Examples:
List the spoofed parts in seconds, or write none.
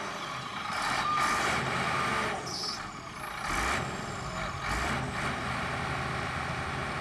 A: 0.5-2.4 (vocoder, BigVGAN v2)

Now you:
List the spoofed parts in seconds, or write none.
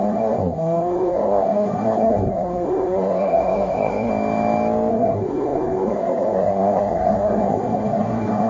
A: 0.0-4.1 (codec, SNAC); 4.9-8.5